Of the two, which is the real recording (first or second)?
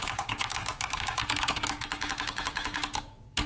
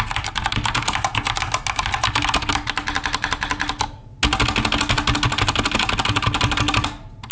second